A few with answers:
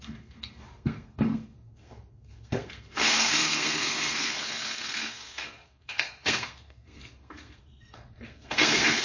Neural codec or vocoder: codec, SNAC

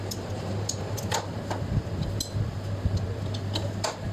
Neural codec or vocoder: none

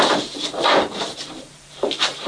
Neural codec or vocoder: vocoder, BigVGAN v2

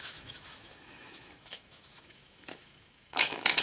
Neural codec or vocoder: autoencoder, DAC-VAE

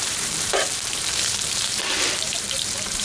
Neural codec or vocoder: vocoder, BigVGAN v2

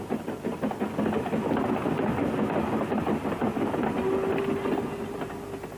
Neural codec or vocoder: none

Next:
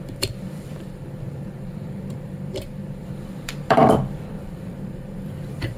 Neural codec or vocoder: vocoder, BigVGAN v2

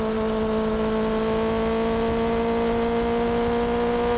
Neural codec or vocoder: none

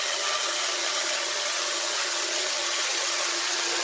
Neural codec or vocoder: vocoder, HiFi-GAN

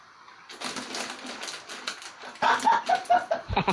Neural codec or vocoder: none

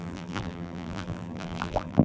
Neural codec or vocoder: vocoder, BigVGAN v2